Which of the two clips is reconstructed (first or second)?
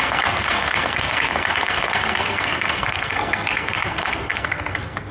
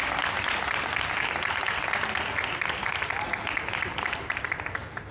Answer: first